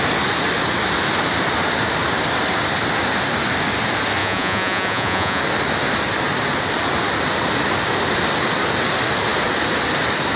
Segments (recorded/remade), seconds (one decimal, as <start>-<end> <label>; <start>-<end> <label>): 0.0-4.2 recorded; 4.2-5.4 remade; 5.4-10.4 recorded